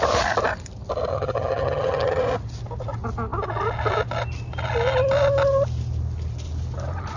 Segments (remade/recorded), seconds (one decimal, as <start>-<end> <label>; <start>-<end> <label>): 0.0-1.1 recorded; 1.1-2.2 remade; 2.2-7.2 recorded